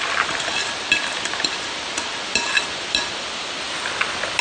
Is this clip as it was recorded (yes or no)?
yes